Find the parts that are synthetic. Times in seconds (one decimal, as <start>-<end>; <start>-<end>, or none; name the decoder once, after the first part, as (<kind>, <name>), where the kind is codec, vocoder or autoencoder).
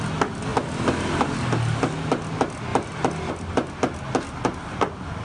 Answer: none